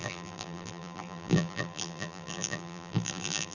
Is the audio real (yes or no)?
no